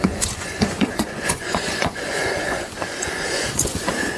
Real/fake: fake